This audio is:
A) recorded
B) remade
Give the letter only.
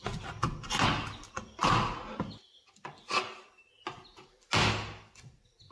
A